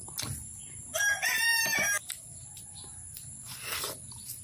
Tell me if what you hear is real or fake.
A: real